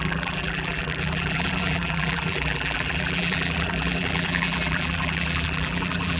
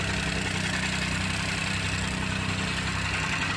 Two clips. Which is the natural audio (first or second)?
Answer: second